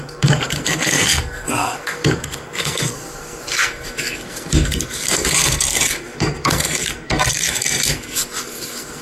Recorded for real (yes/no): no